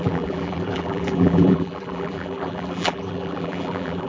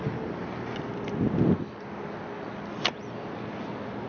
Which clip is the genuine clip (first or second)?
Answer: second